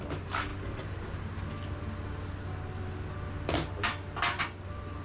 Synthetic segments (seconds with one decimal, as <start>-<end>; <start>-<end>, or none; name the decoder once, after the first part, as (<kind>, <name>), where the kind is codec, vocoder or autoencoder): none